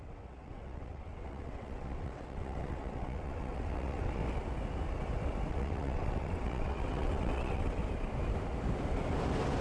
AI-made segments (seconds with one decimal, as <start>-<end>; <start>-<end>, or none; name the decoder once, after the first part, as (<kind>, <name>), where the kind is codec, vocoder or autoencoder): 0.0-4.2 (vocoder, WaveNeXt); 5.5-7.8